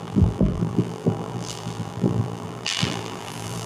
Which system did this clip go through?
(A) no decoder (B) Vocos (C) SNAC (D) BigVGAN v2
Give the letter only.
D